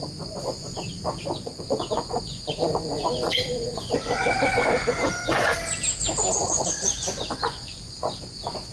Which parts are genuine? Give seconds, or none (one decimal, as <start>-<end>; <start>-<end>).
5.5-6.3